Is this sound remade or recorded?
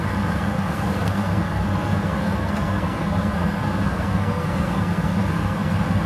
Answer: remade